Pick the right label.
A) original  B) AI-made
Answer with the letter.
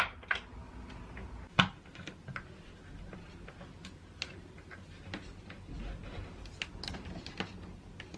A